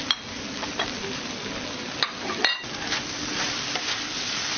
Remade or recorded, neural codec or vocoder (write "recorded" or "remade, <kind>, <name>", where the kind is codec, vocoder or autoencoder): recorded